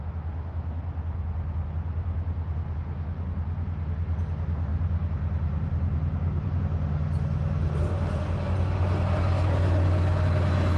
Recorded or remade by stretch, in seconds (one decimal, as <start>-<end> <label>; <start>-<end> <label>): 0.0-4.7 recorded; 4.7-6.6 remade; 6.6-10.8 recorded